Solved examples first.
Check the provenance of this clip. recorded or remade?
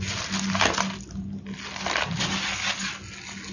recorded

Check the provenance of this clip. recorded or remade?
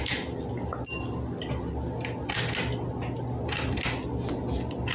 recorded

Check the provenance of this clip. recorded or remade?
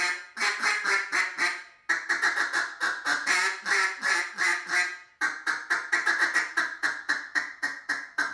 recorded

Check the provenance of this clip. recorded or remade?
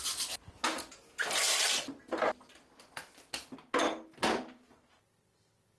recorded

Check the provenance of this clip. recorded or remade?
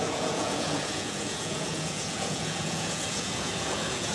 remade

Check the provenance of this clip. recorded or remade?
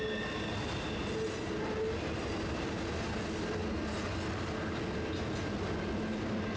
recorded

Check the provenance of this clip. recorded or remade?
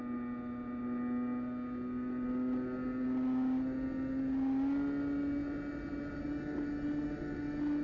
recorded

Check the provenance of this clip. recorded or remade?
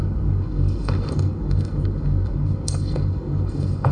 remade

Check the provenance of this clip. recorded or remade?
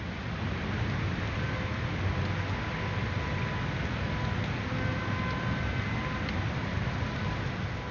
recorded